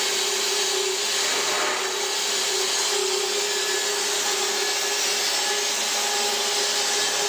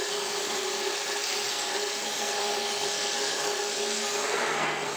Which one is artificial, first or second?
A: second